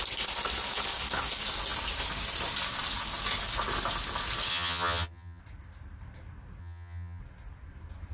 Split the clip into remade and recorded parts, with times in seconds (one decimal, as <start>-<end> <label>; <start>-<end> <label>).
0.0-4.5 recorded; 4.5-5.4 remade; 5.4-6.6 recorded; 6.6-7.2 remade; 7.2-8.1 recorded